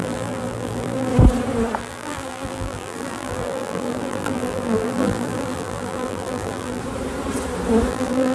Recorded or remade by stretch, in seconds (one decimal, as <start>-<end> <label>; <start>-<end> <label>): 0.0-1.1 remade; 1.1-1.8 recorded; 1.8-6.8 remade; 6.8-7.9 recorded; 7.9-8.3 remade